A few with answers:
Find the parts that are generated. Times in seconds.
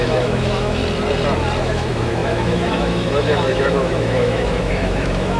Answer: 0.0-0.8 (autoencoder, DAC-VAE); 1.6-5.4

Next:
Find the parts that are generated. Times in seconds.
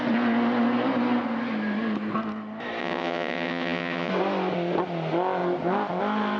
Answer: 2.8-4.1 (vocoder, WaveNeXt)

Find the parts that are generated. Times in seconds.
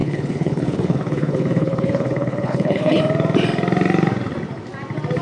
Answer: 0.0-3.0 (codec, HILCodec)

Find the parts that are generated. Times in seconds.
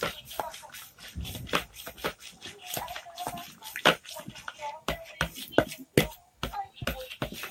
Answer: none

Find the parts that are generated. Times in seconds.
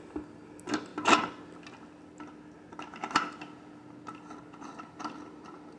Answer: none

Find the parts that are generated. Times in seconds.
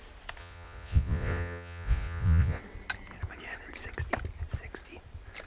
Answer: 0.4-2.6 (vocoder, Vocos)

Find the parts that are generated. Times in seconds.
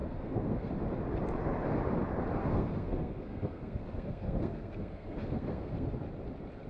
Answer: 0.0-0.7 (codec, SNAC); 2.4-5.9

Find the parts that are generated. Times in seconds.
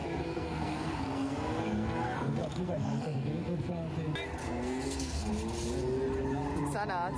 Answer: 0.0-3.9 (codec, SNAC); 4.4-5.3